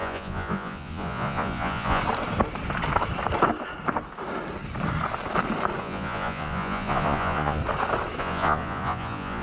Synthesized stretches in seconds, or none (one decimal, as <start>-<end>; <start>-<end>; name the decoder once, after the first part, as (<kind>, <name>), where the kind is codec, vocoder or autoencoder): 0.0-2.0 (vocoder, Vocos); 5.8-7.6; 8.2-9.4